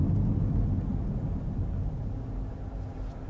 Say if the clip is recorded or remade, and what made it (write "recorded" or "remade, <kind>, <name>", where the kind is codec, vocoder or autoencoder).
recorded